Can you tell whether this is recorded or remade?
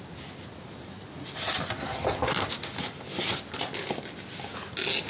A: recorded